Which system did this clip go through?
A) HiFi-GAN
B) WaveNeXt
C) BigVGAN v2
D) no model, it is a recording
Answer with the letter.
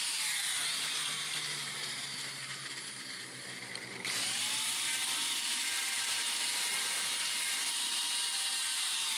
C